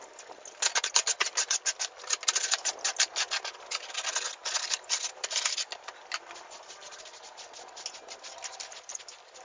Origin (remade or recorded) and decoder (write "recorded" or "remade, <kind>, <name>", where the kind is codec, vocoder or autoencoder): recorded